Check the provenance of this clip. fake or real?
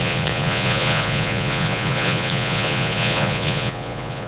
fake